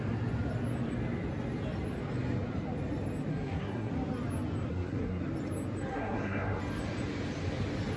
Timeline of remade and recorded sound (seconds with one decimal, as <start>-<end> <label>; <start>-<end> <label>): 0.0-3.3 recorded; 3.3-3.9 remade; 3.9-4.7 recorded; 4.7-5.2 remade; 5.2-5.9 recorded; 5.9-6.6 remade; 6.6-8.0 recorded